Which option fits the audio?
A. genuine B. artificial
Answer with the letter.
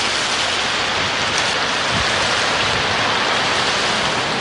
A